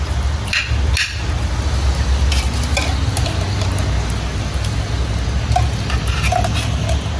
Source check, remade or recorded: recorded